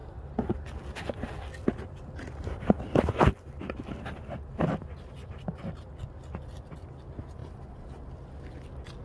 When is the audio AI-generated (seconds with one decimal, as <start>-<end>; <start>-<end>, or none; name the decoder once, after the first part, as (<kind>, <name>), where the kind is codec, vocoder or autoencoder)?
none

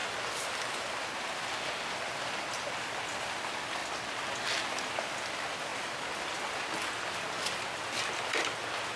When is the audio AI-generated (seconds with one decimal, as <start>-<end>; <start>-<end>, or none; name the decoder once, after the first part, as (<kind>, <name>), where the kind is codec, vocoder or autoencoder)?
none

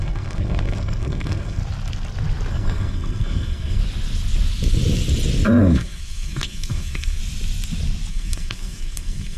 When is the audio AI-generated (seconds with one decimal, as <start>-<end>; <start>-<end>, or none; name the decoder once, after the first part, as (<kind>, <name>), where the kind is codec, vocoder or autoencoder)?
0.0-1.6 (codec, SNAC); 2.5-3.8; 5.6-7.2; 8.1-9.4

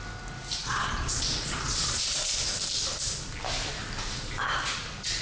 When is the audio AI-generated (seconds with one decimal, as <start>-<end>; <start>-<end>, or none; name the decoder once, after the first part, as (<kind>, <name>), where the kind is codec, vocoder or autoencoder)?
0.6-2.4 (vocoder, Vocos)

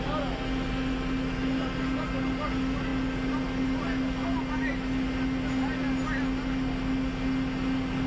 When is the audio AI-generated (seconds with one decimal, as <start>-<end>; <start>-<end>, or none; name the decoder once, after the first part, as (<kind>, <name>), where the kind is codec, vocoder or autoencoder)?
none

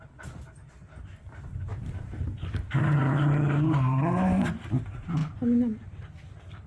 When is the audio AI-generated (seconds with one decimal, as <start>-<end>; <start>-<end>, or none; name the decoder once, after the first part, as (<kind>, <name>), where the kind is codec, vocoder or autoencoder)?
1.7-4.8 (vocoder, BigVGAN v2)